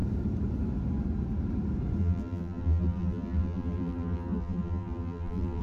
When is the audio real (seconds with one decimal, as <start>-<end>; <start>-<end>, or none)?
0.0-2.0